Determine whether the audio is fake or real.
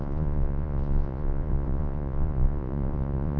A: fake